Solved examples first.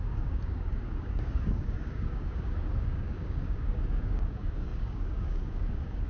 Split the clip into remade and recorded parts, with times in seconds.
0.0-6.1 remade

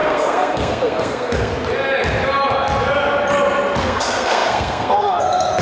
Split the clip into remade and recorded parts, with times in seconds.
0.0-1.5 remade; 1.5-3.8 recorded; 3.8-5.6 remade

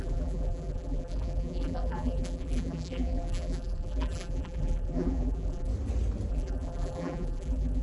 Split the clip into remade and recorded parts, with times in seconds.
0.0-5.7 remade; 5.7-6.3 recorded; 6.3-7.8 remade